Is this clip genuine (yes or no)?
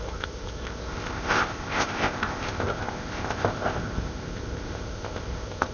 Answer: no